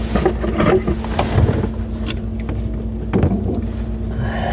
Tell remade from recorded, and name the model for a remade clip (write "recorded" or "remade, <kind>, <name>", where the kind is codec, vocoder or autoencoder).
recorded